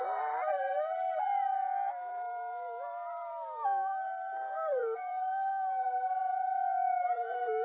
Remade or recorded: remade